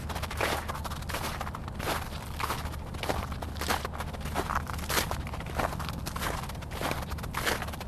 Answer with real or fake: real